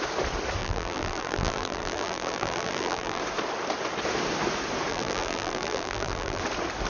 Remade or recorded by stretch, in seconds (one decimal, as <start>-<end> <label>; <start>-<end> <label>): 0.0-0.6 recorded; 0.6-3.2 remade; 3.2-4.9 recorded; 4.9-6.4 remade; 6.4-6.9 recorded